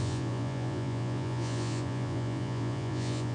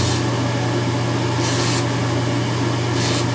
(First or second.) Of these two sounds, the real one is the second